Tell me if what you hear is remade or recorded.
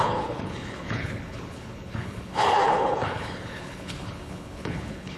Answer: remade